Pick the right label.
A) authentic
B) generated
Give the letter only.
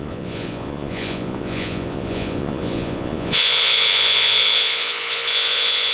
B